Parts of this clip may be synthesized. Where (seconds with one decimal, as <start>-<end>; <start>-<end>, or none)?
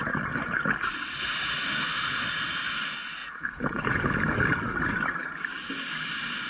3.2-4.0